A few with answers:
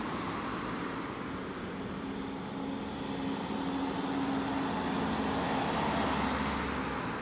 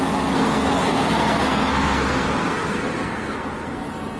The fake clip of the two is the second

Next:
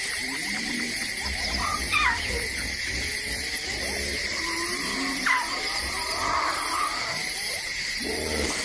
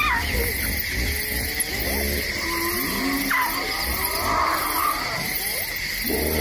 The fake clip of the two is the first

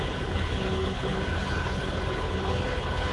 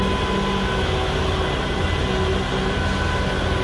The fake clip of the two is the first